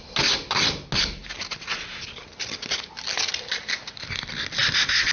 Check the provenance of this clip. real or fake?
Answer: real